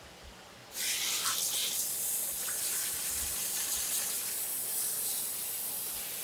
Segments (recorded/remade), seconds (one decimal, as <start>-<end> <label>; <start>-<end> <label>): 0.0-6.2 recorded

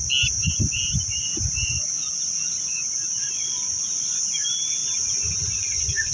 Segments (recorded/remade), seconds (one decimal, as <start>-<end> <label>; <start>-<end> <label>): 0.0-6.1 recorded